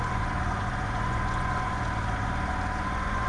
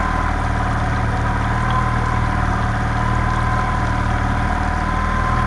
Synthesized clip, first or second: first